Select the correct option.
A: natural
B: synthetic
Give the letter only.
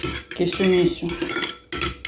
A